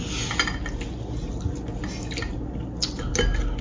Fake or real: real